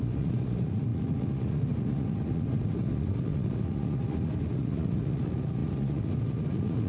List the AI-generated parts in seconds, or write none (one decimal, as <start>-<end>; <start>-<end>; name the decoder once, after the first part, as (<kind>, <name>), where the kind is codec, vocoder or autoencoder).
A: 0.0-6.9 (vocoder, Vocos)